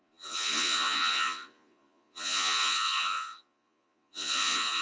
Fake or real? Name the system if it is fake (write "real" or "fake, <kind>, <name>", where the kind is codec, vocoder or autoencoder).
fake, vocoder, Vocos